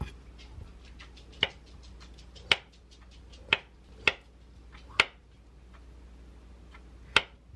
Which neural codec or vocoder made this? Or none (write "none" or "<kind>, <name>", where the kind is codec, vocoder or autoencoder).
none